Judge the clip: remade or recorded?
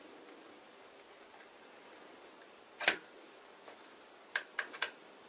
recorded